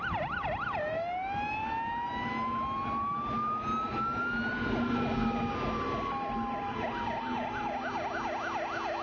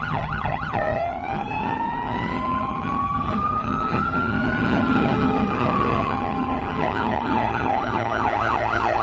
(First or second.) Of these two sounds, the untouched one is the first